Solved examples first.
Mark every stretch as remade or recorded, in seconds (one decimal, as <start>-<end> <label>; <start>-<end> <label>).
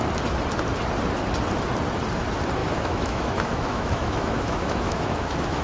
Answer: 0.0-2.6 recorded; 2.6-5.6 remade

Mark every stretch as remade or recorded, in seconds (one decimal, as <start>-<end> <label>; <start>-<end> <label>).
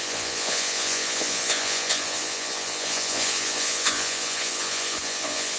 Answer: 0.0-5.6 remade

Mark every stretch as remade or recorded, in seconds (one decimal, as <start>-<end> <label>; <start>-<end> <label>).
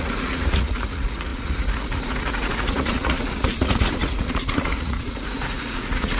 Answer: 0.0-6.2 remade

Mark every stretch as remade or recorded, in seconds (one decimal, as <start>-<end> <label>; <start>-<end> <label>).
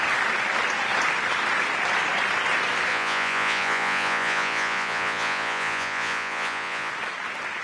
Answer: 0.0-2.9 recorded; 2.9-6.9 remade; 6.9-7.6 recorded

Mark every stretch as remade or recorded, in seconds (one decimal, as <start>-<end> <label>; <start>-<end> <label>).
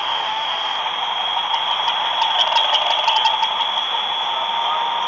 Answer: 0.0-0.8 remade; 0.8-5.1 recorded